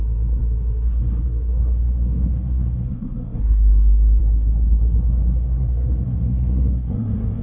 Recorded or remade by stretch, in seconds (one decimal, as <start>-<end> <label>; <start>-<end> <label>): 0.0-7.4 remade